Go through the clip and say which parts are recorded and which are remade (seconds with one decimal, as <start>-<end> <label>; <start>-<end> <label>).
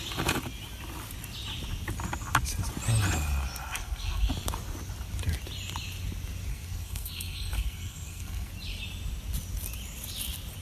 0.0-3.6 recorded; 3.6-4.3 remade; 4.3-6.5 recorded; 6.5-8.5 remade; 8.5-10.6 recorded